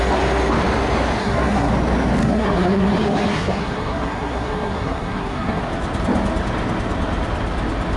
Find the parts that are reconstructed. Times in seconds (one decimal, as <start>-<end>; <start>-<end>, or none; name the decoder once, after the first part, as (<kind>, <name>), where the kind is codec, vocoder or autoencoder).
1.2-1.7 (codec, SNAC); 2.2-5.6